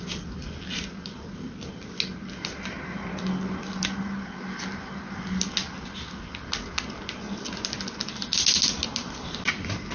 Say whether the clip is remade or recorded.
recorded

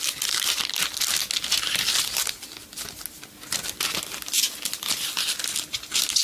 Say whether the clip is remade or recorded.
recorded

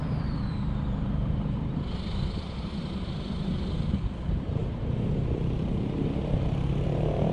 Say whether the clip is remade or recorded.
remade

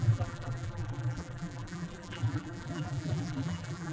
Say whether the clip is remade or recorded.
remade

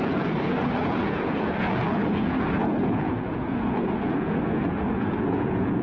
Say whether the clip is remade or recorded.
remade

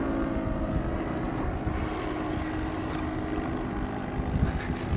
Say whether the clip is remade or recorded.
recorded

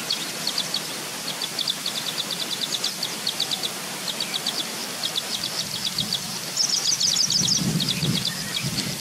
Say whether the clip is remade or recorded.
recorded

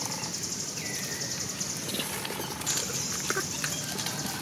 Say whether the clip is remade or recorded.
recorded